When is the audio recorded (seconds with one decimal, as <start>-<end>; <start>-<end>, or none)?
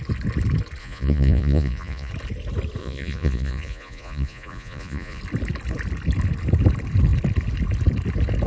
0.0-0.8; 2.1-2.8; 5.2-8.5